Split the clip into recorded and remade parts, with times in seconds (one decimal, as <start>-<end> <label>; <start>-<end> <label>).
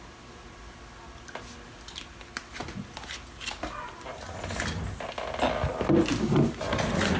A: 0.0-7.2 recorded